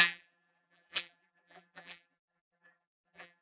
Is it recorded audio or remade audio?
remade